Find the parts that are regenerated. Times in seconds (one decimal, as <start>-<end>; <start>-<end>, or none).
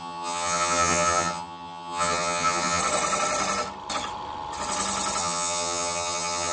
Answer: 0.0-2.8; 5.2-6.5